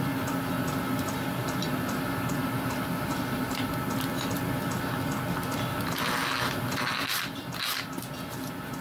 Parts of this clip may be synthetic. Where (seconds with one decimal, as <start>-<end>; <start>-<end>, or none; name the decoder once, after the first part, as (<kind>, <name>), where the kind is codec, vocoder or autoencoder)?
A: 2.4-3.7 (vocoder, BigVGAN v2)